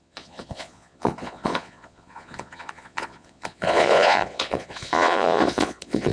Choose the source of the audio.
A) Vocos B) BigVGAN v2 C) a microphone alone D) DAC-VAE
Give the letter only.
A